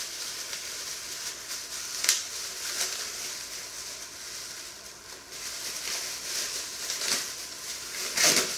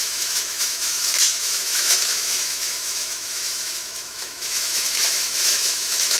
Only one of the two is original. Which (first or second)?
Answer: first